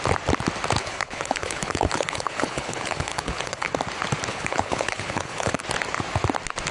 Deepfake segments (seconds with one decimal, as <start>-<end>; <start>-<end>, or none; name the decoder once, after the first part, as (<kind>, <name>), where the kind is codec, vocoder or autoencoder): 0.8-3.7 (codec, HILCodec); 4.3-5.6